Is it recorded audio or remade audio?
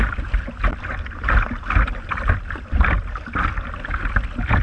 recorded